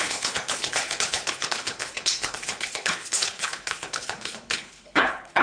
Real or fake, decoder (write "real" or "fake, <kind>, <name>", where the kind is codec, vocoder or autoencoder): fake, codec, HILCodec